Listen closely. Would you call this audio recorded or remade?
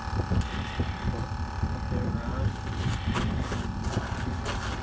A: recorded